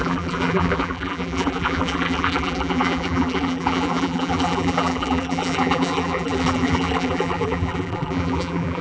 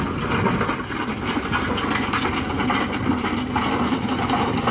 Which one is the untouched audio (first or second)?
second